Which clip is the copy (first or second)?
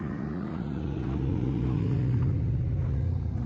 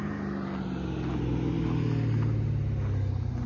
first